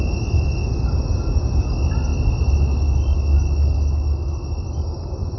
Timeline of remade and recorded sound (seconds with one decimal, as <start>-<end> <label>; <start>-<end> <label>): 0.0-5.4 recorded